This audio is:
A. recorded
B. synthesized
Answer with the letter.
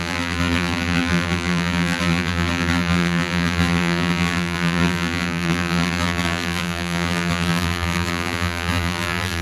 B